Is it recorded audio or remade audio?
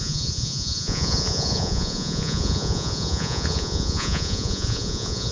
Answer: remade